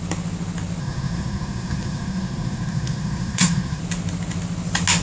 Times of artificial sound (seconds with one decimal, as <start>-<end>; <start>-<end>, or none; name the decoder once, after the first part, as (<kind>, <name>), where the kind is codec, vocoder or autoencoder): 0.8-3.8 (codec, SNAC)